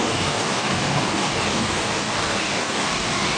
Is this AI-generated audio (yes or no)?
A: yes